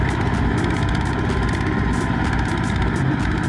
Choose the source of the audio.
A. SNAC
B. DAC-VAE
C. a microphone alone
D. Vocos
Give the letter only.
C